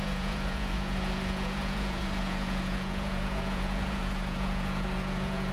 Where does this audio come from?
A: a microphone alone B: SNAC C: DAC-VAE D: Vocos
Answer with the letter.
D